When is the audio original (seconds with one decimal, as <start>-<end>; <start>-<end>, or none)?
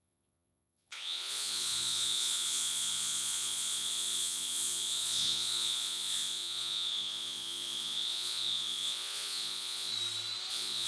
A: 9.9-10.5